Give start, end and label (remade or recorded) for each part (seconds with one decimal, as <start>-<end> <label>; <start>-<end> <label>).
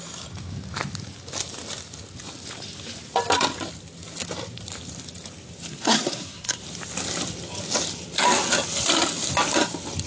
0.0-5.7 recorded; 5.7-6.6 remade; 6.6-10.1 recorded